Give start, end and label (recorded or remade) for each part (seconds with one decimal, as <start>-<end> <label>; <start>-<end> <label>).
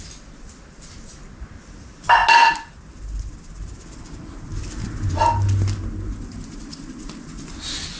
0.0-8.0 recorded